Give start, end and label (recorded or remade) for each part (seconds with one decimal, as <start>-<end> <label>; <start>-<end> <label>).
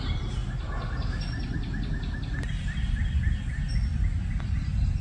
0.0-0.4 recorded; 0.4-3.2 remade; 3.2-3.9 recorded; 3.9-4.5 remade; 4.5-5.0 recorded